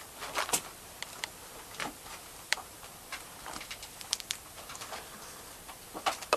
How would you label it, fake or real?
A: fake